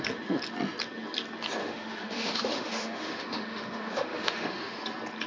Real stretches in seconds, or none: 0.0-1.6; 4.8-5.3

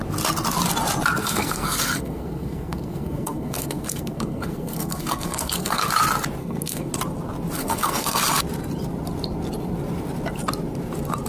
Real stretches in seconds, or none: 0.0-1.2; 5.9-6.4; 6.9-7.6; 8.2-11.3

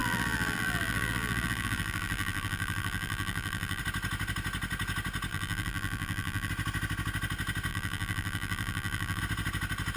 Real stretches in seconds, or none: 3.8-5.3; 6.5-7.7; 9.2-10.0

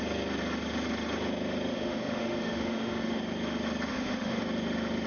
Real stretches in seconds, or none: 0.0-1.7; 3.2-3.9; 4.4-5.1

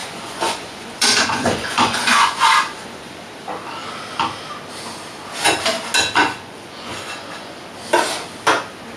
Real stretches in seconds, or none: 3.2-6.2; 7.6-9.0

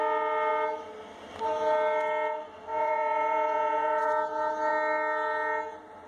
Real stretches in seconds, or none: 0.0-2.7; 4.1-6.1

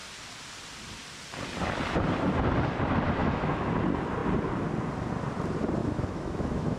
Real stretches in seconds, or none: 0.0-3.2; 3.7-5.8